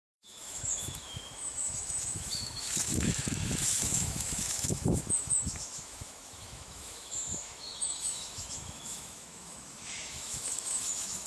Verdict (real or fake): fake